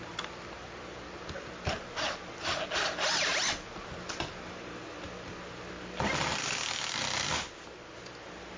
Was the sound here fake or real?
real